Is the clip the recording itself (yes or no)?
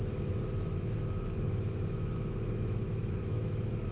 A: no